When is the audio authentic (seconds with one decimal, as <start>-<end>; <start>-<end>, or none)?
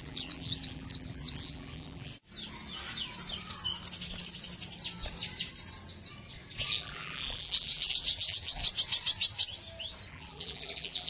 2.1-6.7; 8.6-10.1